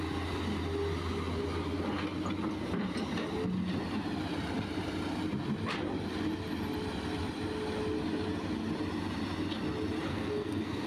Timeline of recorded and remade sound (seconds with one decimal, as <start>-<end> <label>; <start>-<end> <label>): 0.0-10.1 recorded; 10.1-10.9 remade